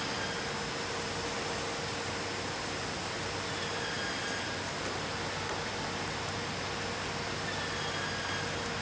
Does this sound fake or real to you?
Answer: real